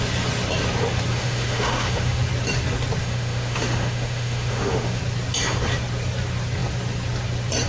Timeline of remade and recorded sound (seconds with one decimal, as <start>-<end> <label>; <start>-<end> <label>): 0.0-1.1 recorded; 1.1-2.2 remade; 2.2-3.0 recorded; 3.0-5.0 remade; 5.0-7.7 recorded